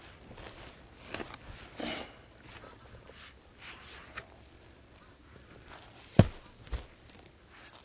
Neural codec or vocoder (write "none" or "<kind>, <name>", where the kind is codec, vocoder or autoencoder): none